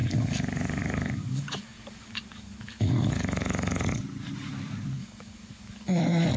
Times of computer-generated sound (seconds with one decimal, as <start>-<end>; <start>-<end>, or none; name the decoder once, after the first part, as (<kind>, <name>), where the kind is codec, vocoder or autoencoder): 0.0-3.8 (codec, DAC); 5.0-6.0